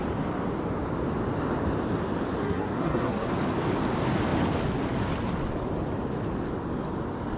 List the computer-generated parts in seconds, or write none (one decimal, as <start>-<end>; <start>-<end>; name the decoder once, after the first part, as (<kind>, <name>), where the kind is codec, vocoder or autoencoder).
2.4-3.3 (codec, SNAC)